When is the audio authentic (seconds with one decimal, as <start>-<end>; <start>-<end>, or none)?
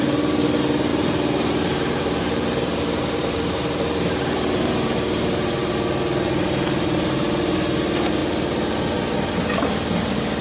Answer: 0.0-0.9; 5.7-10.4